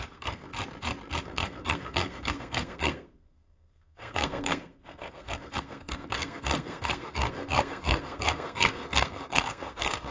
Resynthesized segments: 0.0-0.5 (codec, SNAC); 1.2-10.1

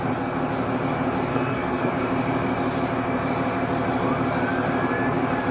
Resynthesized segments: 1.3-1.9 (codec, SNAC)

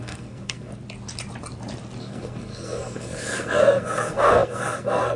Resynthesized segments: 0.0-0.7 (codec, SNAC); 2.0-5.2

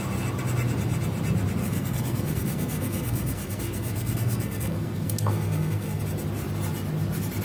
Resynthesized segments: 1.6-6.0 (codec, SNAC)

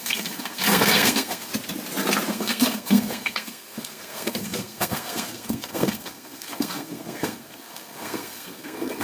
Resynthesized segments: 0.0-1.5 (codec, SNAC); 2.3-9.0

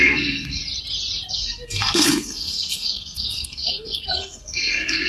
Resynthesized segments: 0.0-0.6 (codec, SNAC); 1.3-5.1

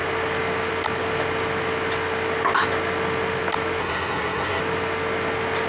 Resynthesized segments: 3.8-4.6 (codec, SNAC)

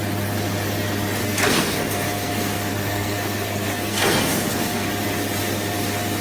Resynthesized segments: 1.2-4.9 (codec, SNAC)